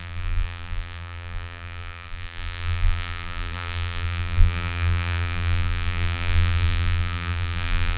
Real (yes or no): no